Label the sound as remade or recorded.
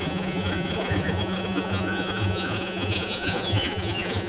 remade